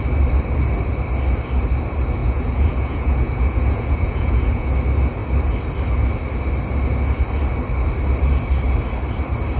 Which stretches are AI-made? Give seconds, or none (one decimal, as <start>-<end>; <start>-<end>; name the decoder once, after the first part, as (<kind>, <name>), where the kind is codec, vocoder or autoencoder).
2.2-4.7 (vocoder, Vocos)